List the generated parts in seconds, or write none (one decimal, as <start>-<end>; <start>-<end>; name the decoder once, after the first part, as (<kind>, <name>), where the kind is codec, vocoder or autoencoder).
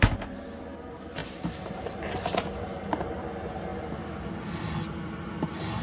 1.2-3.1 (vocoder, BigVGAN v2)